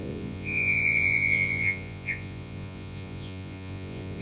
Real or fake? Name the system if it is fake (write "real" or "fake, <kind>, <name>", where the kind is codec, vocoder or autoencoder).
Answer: fake, vocoder, Vocos